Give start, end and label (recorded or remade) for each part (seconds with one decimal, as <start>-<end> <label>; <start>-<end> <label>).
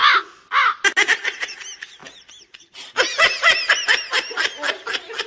0.0-5.3 recorded